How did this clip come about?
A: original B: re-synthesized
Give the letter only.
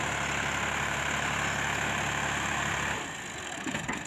A